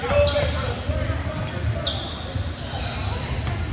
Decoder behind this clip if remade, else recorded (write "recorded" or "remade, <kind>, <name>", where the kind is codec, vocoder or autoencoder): recorded